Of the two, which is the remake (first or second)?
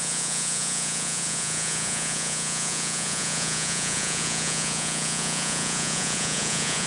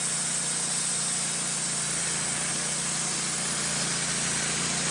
first